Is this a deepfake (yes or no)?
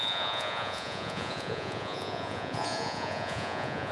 yes